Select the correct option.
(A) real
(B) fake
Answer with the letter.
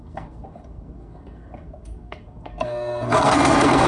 B